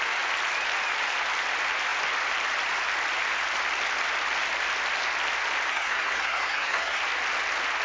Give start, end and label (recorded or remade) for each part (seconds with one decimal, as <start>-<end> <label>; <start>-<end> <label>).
0.0-5.7 recorded; 5.7-7.0 remade; 7.0-7.8 recorded

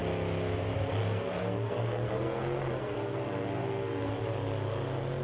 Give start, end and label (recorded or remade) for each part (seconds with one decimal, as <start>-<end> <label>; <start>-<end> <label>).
0.0-1.0 recorded; 1.0-4.1 remade; 4.1-5.2 recorded

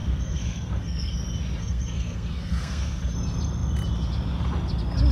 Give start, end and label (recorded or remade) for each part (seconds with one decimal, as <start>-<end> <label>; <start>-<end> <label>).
0.0-1.1 remade; 1.1-1.6 recorded; 1.6-3.0 remade; 3.0-5.1 recorded